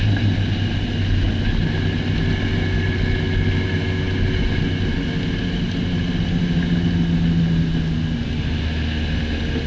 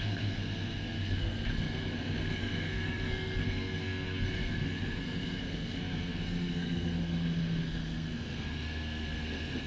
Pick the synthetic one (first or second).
second